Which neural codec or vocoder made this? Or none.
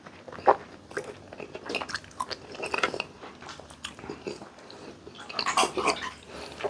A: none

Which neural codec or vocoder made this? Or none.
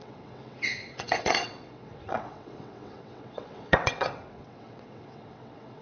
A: vocoder, WaveNeXt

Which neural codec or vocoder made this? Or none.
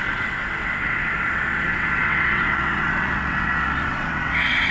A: vocoder, WaveNeXt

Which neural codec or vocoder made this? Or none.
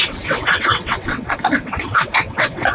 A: vocoder, WaveNeXt